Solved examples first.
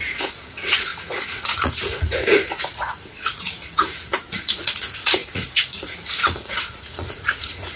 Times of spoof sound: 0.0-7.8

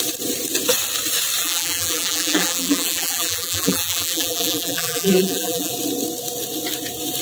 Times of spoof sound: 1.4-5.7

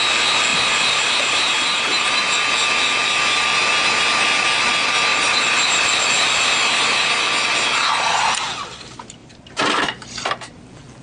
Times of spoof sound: 0.5-2.0; 5.1-6.5; 9.2-9.8

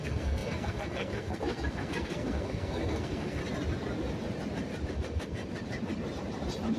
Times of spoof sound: 0.0-3.4; 4.9-5.4